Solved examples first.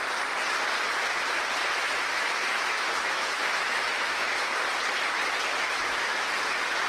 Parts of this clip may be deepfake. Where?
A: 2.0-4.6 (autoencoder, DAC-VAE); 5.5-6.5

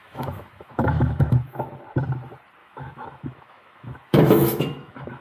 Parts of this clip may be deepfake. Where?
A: 0.0-1.7 (autoencoder, DAC-VAE); 2.6-5.2

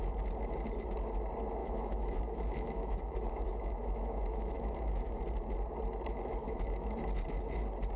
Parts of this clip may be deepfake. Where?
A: 1.6-5.2 (autoencoder, DAC-VAE); 6.4-7.0

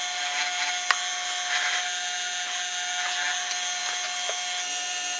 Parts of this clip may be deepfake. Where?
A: none

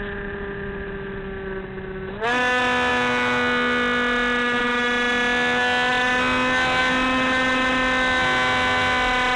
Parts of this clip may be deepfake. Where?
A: none

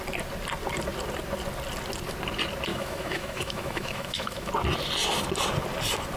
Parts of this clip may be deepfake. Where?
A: 2.7-4.5 (autoencoder, DAC-VAE)

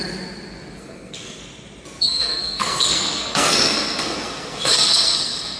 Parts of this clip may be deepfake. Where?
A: 0.8-1.4 (codec, SNAC); 2.0-5.6

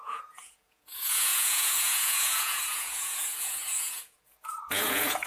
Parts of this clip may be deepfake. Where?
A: 0.0-5.3 (vocoder, Vocos)